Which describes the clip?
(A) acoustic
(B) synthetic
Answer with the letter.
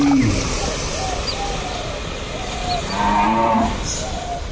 A